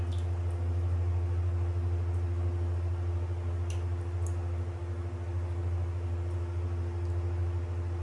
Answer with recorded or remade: recorded